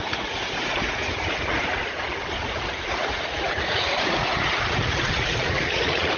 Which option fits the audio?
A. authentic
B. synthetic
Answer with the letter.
B